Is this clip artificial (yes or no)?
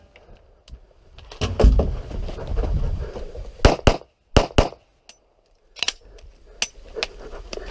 no